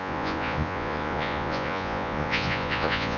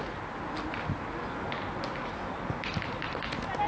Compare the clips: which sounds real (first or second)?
second